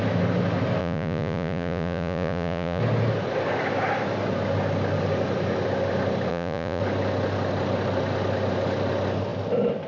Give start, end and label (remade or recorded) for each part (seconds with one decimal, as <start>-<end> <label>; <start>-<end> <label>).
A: 0.0-0.8 recorded; 0.8-2.8 remade; 2.8-6.3 recorded; 6.3-6.8 remade; 6.8-9.9 recorded